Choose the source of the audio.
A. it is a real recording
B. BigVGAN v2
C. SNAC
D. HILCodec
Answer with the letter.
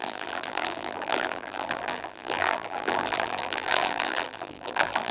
B